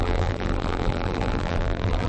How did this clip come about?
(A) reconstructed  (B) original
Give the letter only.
A